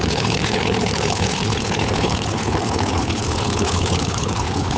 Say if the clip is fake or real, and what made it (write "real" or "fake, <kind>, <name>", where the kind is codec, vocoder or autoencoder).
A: fake, codec, HILCodec